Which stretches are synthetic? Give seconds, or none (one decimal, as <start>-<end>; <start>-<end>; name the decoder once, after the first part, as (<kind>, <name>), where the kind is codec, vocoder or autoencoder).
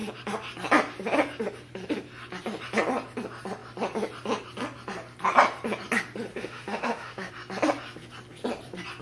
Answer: 6.3-7.3 (autoencoder, DAC-VAE)